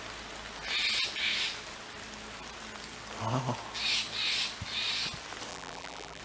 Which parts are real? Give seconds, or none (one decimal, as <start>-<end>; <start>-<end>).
0.0-5.5